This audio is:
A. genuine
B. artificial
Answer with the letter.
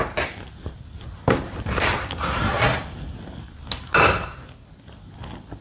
A